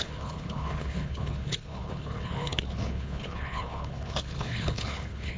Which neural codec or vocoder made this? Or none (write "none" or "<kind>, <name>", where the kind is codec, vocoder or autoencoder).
codec, HILCodec